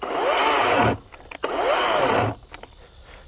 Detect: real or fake real